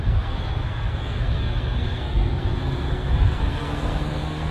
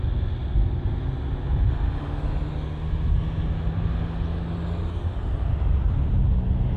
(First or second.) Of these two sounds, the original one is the second